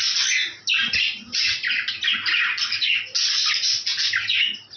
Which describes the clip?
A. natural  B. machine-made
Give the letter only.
A